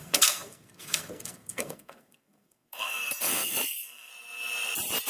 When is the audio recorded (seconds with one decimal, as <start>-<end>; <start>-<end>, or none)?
4.1-5.1